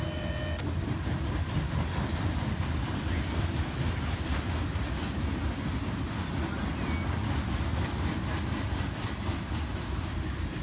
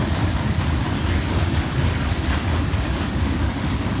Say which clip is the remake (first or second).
second